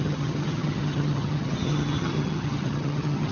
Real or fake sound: fake